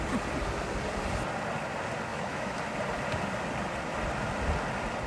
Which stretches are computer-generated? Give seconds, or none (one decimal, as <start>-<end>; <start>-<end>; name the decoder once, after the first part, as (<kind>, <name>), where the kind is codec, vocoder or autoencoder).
2.1-2.6 (autoencoder, DAC-VAE)